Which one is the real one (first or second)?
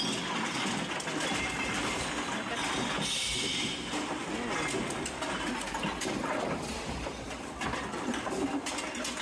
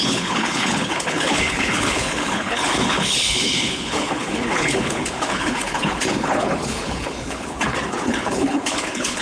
first